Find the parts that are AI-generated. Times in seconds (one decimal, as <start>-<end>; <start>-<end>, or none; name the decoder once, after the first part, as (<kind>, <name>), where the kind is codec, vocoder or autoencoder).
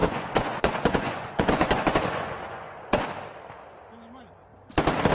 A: 0.0-3.1 (vocoder, Vocos)